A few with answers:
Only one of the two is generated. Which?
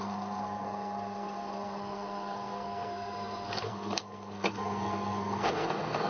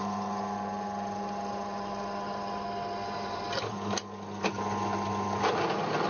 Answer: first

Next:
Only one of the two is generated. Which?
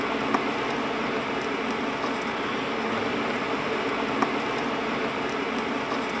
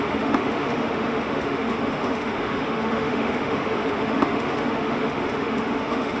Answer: second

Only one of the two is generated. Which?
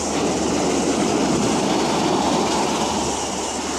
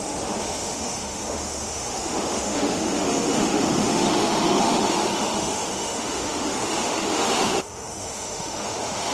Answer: second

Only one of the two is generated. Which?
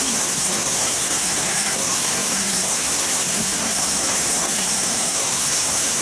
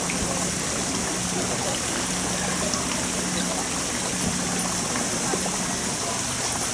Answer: first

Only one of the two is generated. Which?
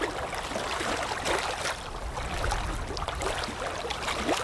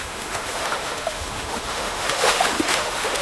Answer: second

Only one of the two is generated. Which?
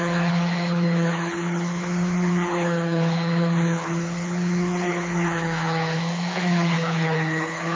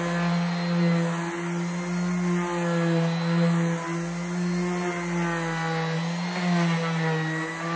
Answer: first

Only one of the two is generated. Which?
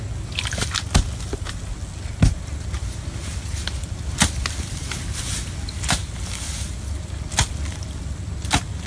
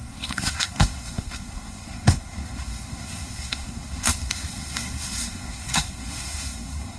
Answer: second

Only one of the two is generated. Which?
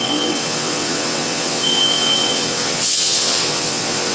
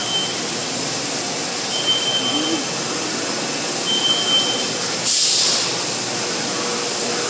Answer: first